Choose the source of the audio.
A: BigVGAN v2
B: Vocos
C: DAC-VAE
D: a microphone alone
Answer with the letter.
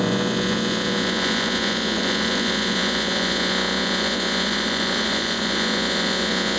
B